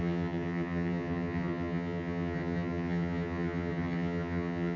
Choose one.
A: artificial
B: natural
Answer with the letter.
A